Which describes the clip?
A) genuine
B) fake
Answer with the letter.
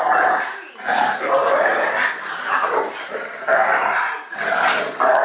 A